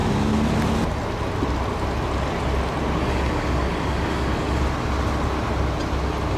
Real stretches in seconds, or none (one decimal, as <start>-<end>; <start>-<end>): 0.0-3.0; 4.6-6.4